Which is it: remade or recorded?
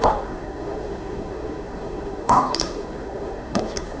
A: remade